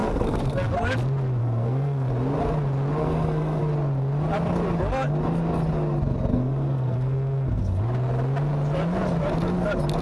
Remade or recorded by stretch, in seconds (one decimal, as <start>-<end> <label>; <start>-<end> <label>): 0.0-0.7 remade; 0.7-1.4 recorded; 1.4-2.1 remade; 2.1-3.0 recorded; 3.0-3.6 remade; 3.6-6.3 recorded; 6.3-7.8 remade; 7.8-10.0 recorded